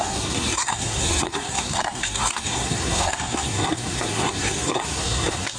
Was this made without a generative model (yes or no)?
no